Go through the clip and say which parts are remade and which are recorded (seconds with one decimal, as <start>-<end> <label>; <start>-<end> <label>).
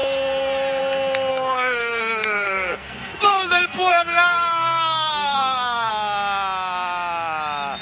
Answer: 0.0-1.3 recorded; 1.3-5.9 remade; 5.9-7.8 recorded